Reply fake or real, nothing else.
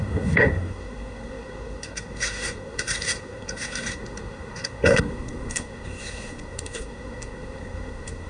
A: fake